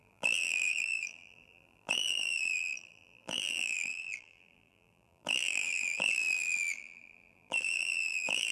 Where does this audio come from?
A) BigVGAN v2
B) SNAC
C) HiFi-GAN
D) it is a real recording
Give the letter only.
A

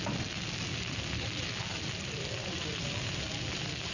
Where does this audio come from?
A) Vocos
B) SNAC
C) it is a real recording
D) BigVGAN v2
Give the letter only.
C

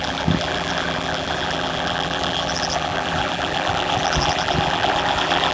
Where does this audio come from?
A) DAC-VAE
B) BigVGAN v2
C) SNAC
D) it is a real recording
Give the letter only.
B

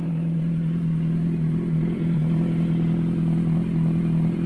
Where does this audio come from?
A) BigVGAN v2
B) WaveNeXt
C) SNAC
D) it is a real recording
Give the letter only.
A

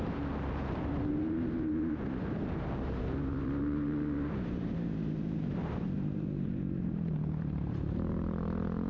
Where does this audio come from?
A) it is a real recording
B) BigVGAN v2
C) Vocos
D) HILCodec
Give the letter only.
B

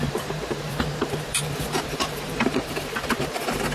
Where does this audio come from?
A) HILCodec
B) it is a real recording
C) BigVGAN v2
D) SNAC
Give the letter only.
C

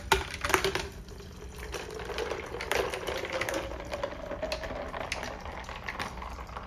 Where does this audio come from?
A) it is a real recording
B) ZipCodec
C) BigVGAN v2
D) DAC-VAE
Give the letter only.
A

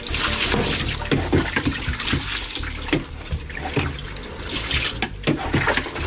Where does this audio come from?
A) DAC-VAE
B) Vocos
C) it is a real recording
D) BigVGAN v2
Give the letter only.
C